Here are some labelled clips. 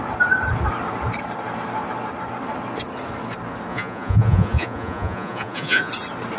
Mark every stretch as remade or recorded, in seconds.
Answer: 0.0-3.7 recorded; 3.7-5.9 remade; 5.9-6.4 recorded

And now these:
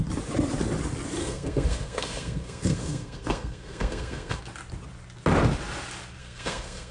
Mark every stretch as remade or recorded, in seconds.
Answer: 0.0-1.2 recorded; 1.2-4.4 remade; 4.4-6.2 recorded; 6.2-6.9 remade

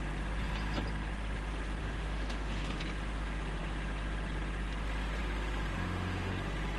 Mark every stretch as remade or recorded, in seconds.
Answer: 0.0-1.8 recorded; 1.8-2.8 remade; 2.8-5.8 recorded; 5.8-6.3 remade; 6.3-6.8 recorded

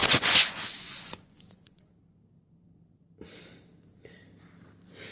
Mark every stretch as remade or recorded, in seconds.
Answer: 0.0-1.9 remade; 1.9-5.1 recorded